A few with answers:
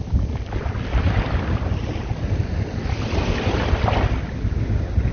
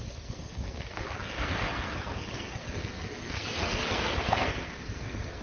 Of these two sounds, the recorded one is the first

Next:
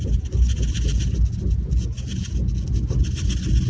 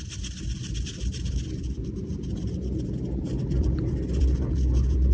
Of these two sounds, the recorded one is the first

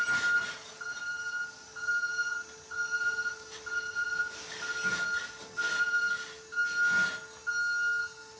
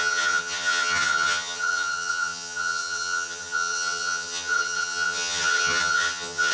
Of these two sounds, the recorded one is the first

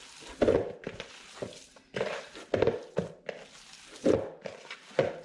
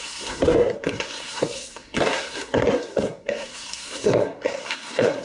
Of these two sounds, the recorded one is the first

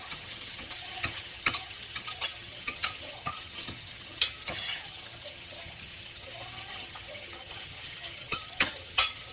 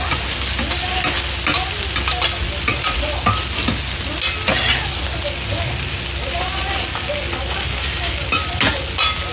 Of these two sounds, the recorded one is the second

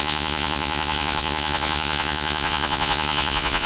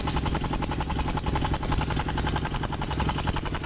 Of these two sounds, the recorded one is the second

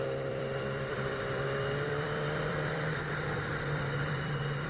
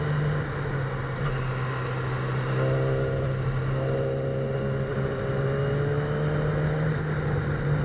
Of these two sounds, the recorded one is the second